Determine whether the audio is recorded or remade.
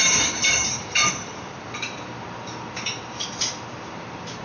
remade